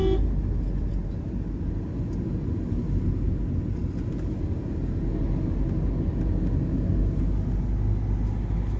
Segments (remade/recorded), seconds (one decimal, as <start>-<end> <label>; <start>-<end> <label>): 0.0-8.8 recorded